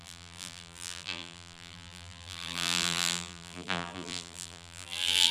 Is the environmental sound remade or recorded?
remade